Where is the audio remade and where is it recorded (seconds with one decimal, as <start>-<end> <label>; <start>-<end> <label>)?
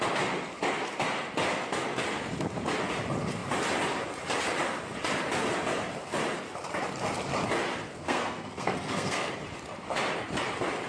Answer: 0.0-7.9 recorded; 7.9-9.3 remade; 9.3-10.9 recorded